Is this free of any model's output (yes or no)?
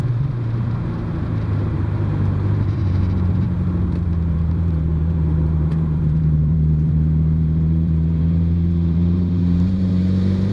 no